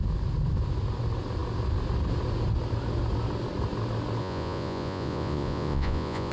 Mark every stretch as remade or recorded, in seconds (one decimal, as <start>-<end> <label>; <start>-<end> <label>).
0.0-4.2 recorded; 4.2-6.3 remade